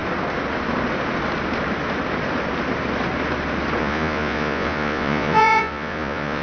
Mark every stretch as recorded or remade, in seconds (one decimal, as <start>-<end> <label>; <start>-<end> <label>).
0.0-3.8 recorded; 3.8-6.4 remade